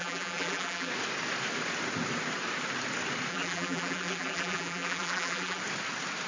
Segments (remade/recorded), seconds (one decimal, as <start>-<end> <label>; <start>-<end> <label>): 0.0-0.9 remade; 0.9-3.3 recorded; 3.3-5.6 remade; 5.6-6.3 recorded